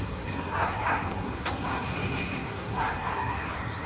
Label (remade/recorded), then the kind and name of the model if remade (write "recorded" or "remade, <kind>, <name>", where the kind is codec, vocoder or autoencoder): remade, codec, SNAC